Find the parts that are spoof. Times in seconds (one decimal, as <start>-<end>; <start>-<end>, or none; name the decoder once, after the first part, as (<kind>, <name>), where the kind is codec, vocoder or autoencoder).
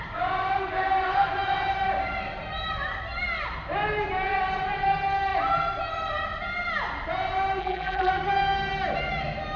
7.6-8.1 (vocoder, BigVGAN v2)